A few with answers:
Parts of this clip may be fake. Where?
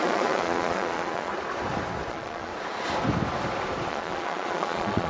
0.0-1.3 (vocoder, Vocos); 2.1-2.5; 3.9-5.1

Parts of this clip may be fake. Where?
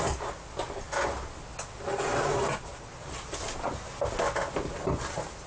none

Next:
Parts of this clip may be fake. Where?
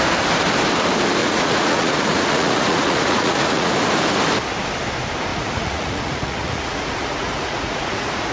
1.2-3.7 (vocoder, Vocos); 5.3-8.3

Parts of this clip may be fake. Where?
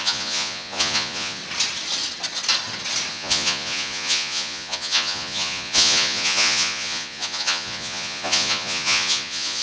0.0-1.4 (vocoder, Vocos); 3.1-9.6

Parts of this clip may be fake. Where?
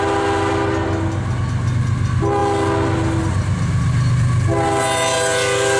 none